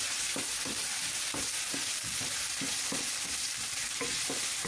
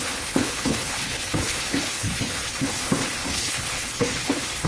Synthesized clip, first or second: second